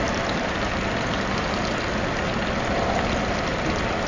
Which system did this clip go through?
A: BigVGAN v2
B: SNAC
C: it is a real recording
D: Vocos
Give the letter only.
C